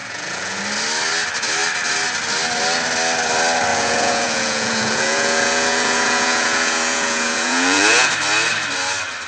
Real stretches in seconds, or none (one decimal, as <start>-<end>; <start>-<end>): 0.6-3.7; 8.1-9.3